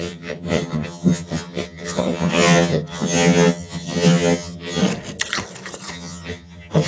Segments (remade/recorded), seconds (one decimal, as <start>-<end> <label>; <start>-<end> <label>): 0.0-4.8 remade; 4.8-5.9 recorded; 5.9-6.9 remade